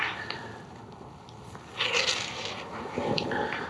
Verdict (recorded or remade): recorded